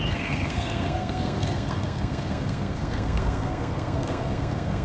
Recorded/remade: remade